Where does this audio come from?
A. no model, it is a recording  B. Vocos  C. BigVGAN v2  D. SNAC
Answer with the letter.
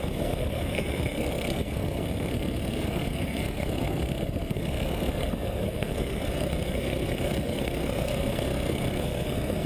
D